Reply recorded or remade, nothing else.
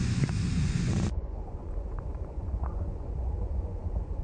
remade